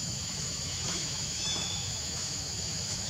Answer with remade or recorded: remade